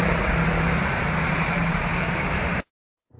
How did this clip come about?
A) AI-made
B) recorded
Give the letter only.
A